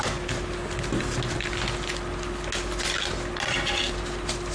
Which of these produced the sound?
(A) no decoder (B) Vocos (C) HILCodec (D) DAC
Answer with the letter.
A